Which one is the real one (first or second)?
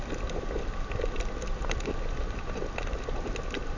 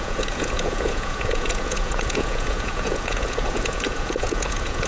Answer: first